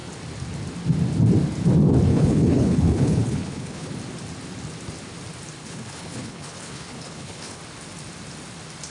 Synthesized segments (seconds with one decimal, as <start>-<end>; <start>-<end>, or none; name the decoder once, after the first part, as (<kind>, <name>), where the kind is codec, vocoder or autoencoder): 2.1-3.9 (codec, HILCodec); 5.6-7.6